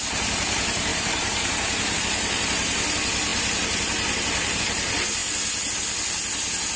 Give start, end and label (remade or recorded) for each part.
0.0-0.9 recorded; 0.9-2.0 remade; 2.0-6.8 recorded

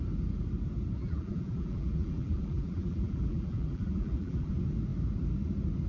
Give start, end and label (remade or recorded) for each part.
0.0-1.0 recorded; 1.0-4.5 remade; 4.5-5.9 recorded

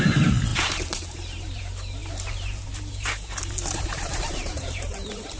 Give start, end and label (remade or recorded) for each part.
0.0-0.5 recorded; 0.5-1.6 remade; 1.6-2.0 recorded; 2.0-5.4 remade

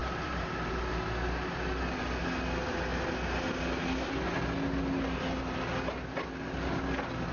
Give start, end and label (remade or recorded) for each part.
0.0-0.9 remade; 0.9-7.3 recorded